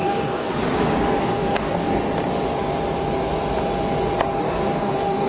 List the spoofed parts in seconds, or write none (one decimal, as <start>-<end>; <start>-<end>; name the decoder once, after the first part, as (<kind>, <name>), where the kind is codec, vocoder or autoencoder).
0.0-0.5 (codec, DAC); 1.2-2.0; 4.4-5.3